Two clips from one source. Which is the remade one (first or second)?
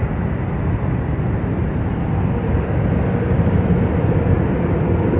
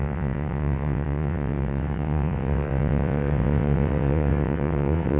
second